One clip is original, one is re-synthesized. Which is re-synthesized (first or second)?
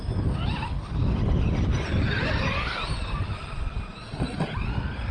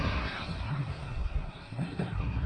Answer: second